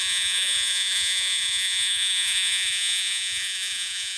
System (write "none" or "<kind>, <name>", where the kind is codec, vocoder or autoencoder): vocoder, Vocos